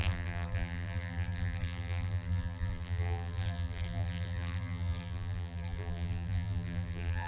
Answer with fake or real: fake